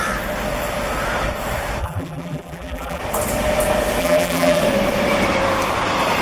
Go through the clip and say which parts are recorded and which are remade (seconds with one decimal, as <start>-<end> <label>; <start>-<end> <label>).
0.0-1.8 recorded; 1.8-3.0 remade; 3.0-4.0 recorded; 4.0-4.6 remade; 4.6-6.2 recorded